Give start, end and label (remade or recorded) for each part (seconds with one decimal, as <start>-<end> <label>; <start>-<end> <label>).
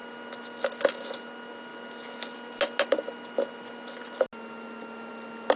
0.0-5.6 recorded